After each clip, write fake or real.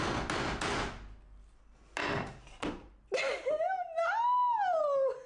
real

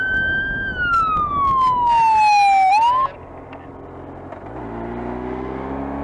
real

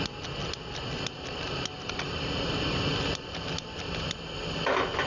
real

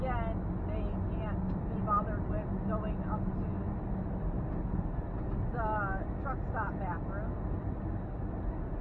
real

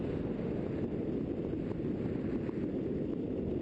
real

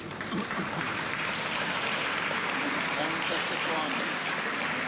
real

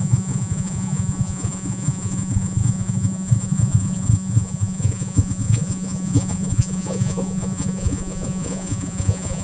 fake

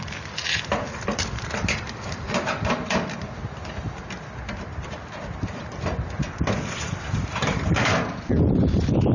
fake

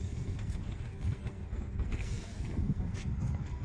fake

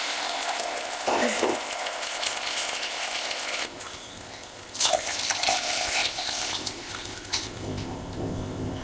fake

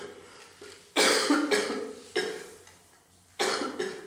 real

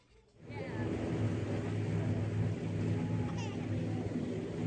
real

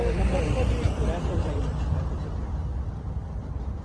real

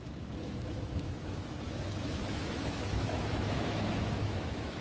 fake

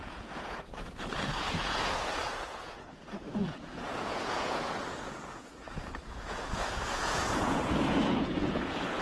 fake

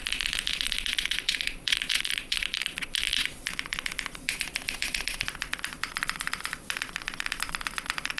fake